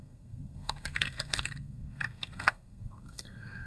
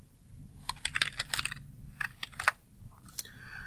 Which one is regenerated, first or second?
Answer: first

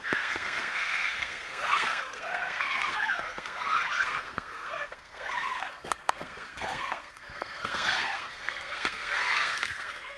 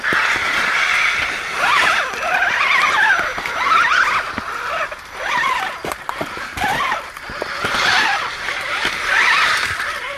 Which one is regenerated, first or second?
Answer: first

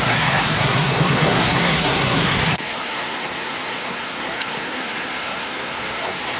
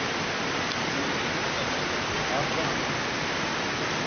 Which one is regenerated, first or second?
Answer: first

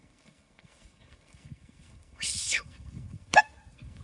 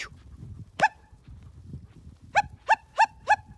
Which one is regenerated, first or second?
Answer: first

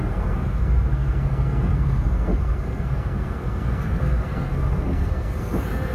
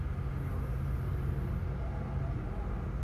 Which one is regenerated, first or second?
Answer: first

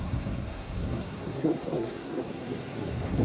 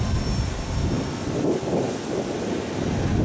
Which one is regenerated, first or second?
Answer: first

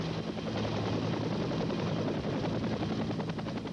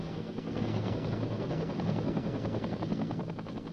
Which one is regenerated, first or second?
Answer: second